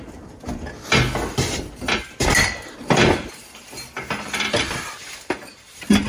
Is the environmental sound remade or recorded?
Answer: remade